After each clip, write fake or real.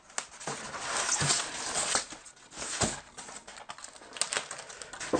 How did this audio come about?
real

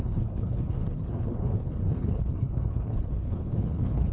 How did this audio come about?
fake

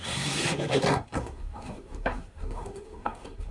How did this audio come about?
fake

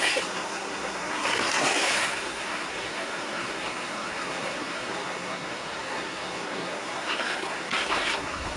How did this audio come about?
fake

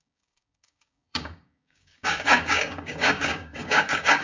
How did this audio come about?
fake